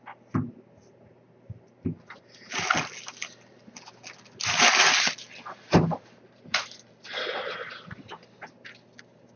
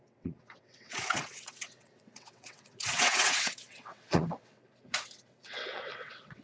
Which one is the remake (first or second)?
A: second